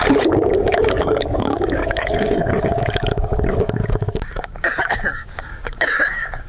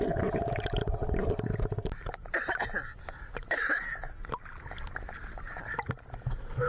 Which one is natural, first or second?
second